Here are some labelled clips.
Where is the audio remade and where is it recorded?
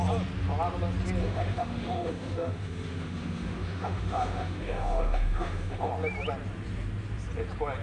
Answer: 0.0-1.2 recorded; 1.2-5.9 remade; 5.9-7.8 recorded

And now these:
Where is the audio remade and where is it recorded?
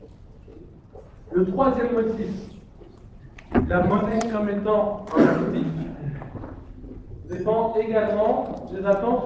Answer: 0.0-2.5 recorded; 2.5-4.6 remade; 4.6-9.3 recorded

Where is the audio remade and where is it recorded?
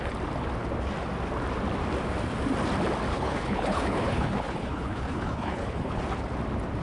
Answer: 0.0-3.1 recorded; 3.1-6.0 remade; 6.0-6.8 recorded